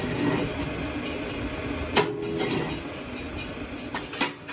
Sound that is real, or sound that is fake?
real